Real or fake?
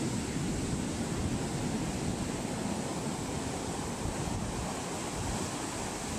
real